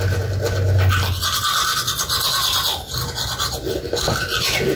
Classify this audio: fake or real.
real